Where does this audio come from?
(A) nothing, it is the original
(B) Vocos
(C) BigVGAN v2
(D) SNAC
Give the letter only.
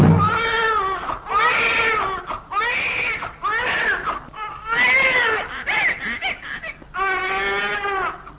A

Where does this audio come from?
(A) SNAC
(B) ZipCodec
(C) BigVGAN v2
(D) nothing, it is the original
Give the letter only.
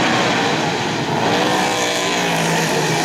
D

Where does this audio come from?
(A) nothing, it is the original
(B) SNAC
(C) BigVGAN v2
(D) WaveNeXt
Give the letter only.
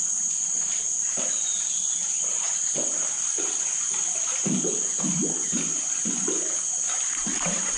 A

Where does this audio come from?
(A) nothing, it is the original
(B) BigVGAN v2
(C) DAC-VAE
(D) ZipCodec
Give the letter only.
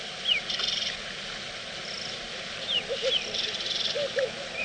B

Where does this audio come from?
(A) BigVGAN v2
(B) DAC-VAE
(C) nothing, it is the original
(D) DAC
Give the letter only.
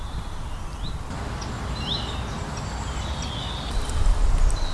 C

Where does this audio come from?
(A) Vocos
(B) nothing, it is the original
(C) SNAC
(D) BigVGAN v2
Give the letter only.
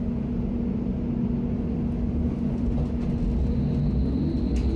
B